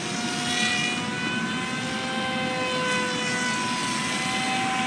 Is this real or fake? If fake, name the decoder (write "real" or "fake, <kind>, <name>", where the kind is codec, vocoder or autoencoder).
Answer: real